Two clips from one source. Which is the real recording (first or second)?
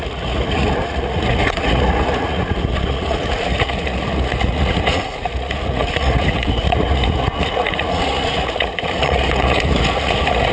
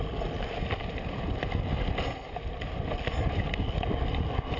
second